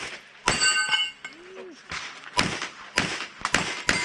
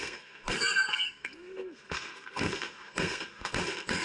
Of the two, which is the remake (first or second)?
second